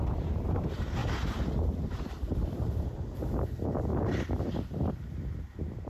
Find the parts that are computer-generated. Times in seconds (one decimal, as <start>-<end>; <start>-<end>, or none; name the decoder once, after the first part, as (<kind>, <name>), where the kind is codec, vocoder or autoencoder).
0.0-1.0 (vocoder, BigVGAN v2); 3.5-3.9; 5.1-5.9